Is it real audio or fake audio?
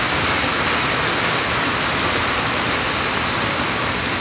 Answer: real